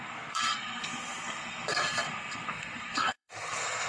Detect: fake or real fake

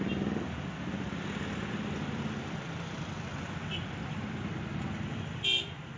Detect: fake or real real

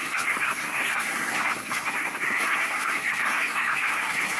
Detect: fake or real fake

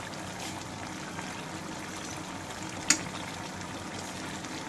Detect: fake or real real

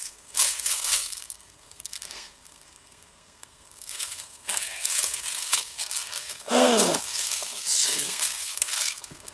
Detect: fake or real fake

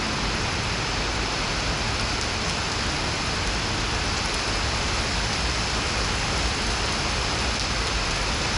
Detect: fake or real real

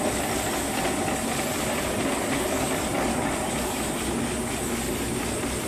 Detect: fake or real real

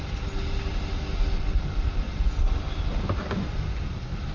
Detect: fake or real real